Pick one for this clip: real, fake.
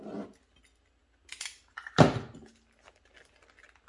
real